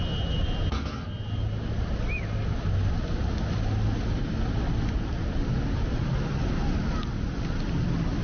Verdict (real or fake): real